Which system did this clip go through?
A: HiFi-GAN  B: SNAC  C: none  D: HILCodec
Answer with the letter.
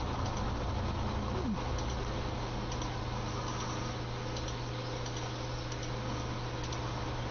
C